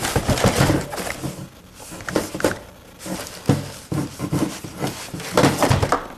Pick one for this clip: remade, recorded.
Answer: recorded